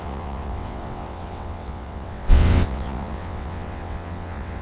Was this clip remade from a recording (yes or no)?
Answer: yes